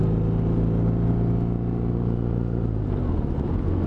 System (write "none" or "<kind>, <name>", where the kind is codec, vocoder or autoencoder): none